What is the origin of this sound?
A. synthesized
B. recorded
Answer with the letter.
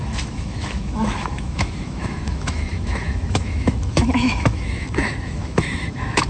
A